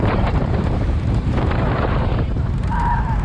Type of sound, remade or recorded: remade